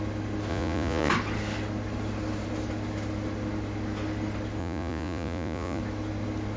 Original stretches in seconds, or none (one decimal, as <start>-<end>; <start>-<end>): 0.0-0.5; 1.1-4.6; 5.8-6.6